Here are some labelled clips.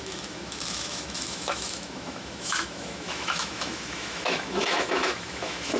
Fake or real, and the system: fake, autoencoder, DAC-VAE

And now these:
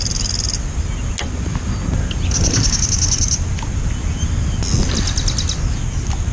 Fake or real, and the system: real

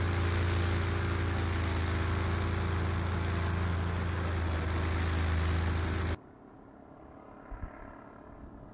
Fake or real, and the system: real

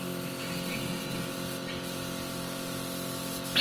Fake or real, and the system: real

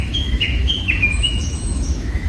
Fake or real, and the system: fake, autoencoder, DAC-VAE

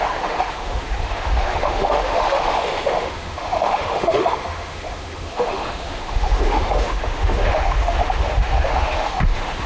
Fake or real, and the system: fake, autoencoder, DAC-VAE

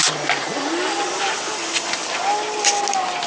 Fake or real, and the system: real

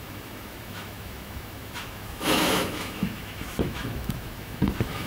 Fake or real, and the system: fake, autoencoder, DAC-VAE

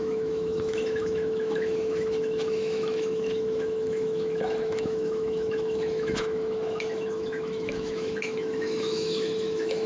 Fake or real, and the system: fake, autoencoder, DAC-VAE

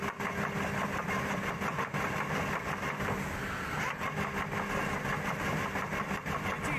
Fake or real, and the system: real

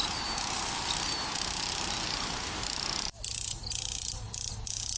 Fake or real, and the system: real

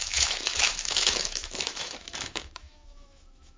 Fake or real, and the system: fake, autoencoder, DAC-VAE